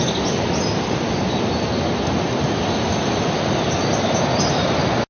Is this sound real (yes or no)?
yes